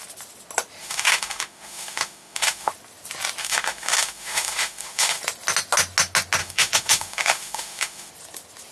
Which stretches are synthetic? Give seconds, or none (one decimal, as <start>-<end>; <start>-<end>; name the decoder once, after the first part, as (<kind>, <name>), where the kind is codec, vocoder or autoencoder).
0.8-2.7 (autoencoder, DAC-VAE); 3.4-5.2; 6.4-8.1